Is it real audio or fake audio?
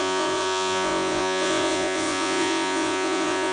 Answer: fake